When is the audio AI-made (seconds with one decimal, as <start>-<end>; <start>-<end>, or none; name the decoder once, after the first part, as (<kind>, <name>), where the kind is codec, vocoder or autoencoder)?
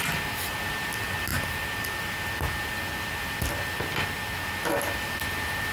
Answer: none